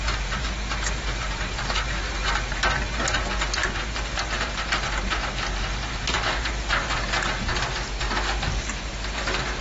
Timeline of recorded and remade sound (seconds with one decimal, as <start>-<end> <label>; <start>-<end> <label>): 0.0-9.6 remade